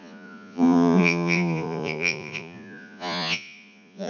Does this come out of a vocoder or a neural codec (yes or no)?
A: yes